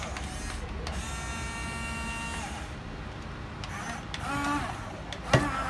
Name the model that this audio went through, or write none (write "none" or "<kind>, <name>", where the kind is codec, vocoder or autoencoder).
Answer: none